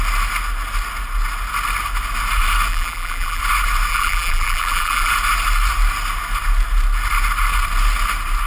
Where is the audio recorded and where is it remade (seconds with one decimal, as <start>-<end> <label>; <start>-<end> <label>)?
0.0-2.7 recorded; 2.7-3.4 remade; 3.4-3.9 recorded; 3.9-5.1 remade; 5.1-8.5 recorded